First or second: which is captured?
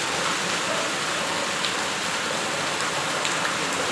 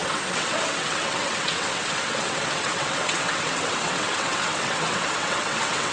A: first